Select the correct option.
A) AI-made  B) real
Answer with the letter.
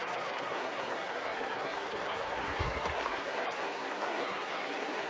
A